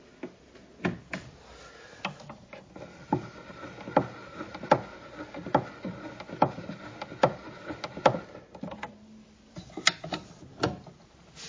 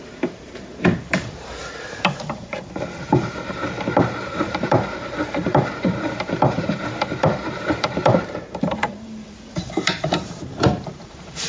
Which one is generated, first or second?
second